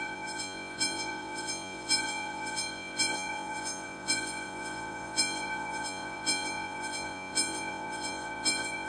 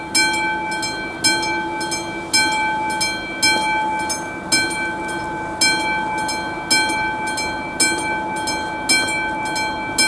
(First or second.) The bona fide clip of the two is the second